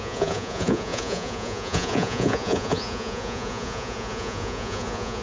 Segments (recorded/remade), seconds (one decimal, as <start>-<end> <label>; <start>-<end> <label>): 0.0-5.2 remade

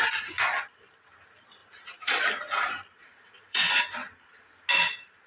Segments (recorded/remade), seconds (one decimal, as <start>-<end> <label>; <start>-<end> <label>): 0.0-1.6 recorded; 1.6-2.2 remade; 2.2-3.0 recorded; 3.0-3.8 remade; 3.8-5.3 recorded

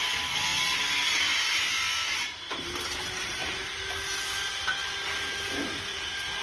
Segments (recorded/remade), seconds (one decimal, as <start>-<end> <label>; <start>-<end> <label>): 0.0-6.4 recorded

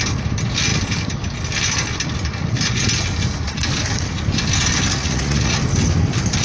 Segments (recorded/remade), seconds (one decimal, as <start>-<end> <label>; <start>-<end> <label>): 0.0-4.9 recorded; 4.9-5.6 remade; 5.6-6.4 recorded